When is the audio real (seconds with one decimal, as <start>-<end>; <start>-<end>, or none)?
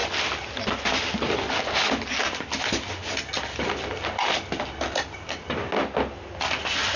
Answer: 0.0-7.0